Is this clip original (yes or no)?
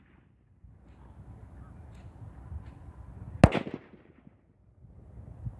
yes